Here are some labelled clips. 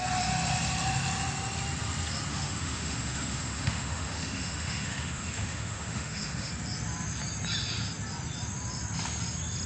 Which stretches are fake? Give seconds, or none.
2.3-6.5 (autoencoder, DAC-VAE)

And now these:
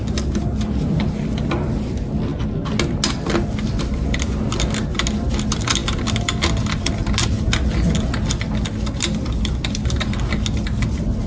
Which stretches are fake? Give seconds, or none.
none

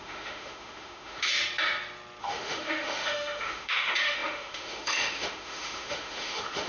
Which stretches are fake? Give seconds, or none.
0.0-1.3 (autoencoder, DAC-VAE); 2.2-6.7